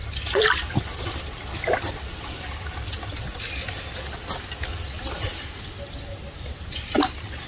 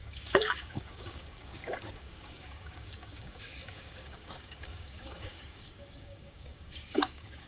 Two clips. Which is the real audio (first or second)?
first